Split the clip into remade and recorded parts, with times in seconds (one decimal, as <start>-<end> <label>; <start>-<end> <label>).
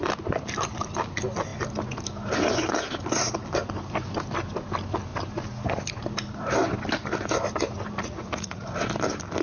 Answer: 0.0-8.0 recorded; 8.0-8.7 remade; 8.7-9.4 recorded